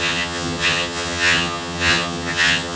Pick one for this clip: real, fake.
fake